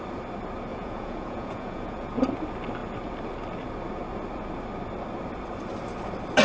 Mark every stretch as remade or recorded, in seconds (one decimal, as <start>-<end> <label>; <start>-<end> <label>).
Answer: 0.0-0.7 recorded; 0.7-2.2 remade; 2.2-6.4 recorded